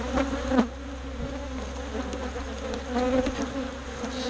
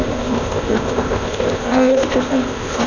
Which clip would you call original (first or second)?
first